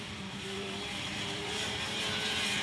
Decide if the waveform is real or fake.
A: fake